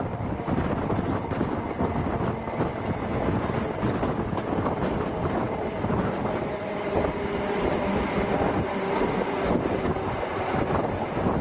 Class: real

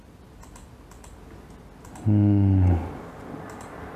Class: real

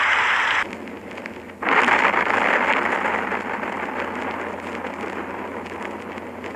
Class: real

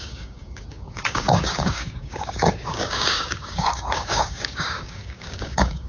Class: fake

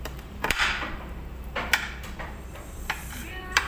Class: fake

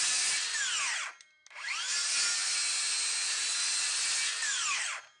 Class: real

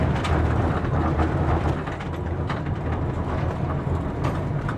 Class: real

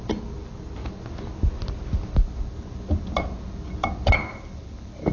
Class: real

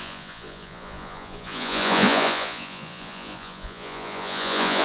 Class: fake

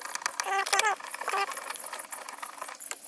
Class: real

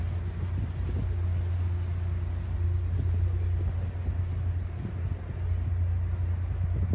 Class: real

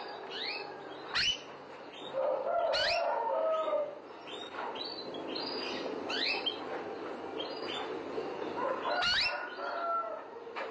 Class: real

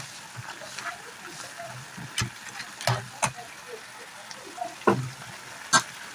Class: real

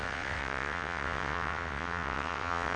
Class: fake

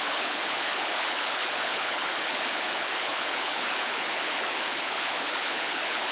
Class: fake